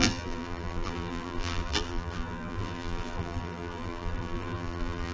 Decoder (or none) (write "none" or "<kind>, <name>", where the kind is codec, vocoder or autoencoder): vocoder, BigVGAN v2